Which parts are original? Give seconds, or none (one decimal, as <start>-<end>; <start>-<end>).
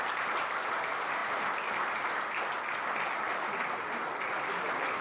0.0-5.0